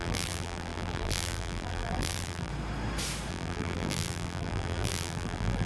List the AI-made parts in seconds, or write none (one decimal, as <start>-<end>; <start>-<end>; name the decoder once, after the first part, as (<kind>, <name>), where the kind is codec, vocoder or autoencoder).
0.0-2.5 (vocoder, BigVGAN v2); 3.3-5.7